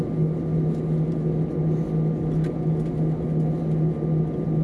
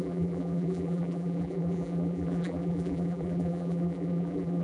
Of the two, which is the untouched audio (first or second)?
first